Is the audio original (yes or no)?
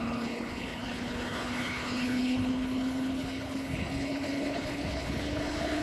no